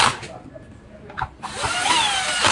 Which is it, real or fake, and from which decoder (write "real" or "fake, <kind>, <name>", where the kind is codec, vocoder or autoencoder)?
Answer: fake, vocoder, BigVGAN v2